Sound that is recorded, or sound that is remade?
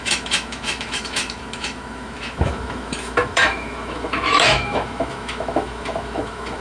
remade